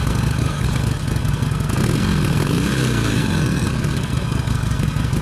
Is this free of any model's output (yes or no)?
no